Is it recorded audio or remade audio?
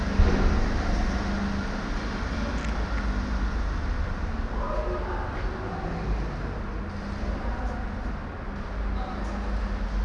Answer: recorded